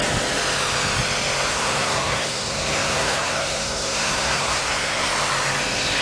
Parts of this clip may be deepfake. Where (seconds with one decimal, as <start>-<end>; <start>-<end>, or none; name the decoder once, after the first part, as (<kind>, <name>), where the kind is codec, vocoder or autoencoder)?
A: 1.5-5.1 (codec, SNAC)